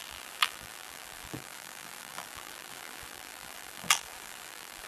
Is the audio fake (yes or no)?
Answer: yes